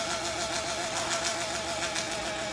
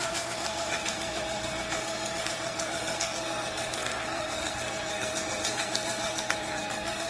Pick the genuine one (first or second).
first